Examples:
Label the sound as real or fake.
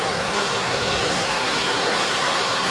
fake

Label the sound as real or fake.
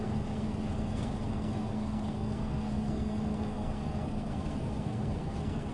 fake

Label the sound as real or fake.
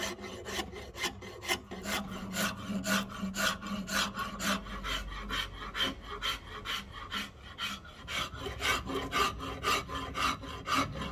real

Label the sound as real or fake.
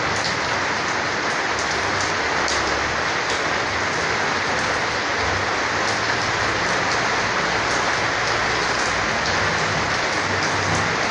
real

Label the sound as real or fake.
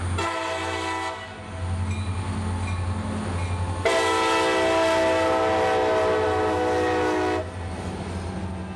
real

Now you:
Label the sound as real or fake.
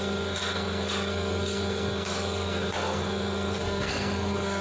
fake